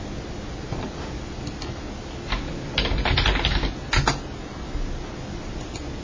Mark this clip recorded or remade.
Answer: recorded